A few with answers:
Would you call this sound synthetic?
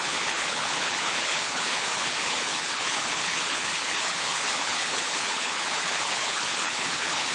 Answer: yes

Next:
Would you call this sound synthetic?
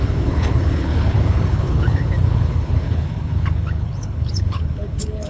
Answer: yes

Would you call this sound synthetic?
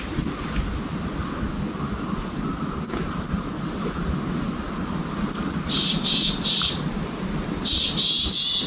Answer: no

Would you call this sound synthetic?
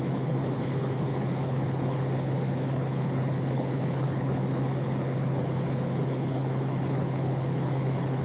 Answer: yes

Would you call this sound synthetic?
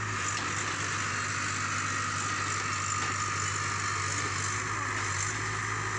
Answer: no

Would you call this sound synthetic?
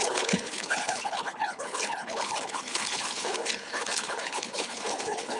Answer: yes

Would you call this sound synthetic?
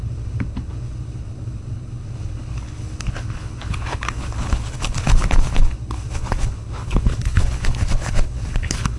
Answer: yes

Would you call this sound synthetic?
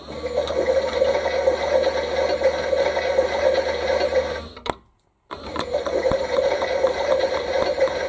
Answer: no